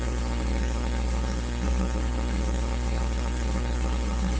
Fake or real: fake